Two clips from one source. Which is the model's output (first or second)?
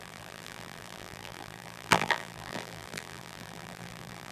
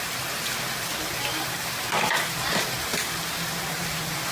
first